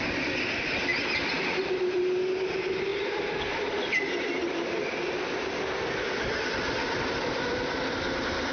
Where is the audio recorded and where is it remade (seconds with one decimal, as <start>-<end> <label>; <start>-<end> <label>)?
0.0-8.5 recorded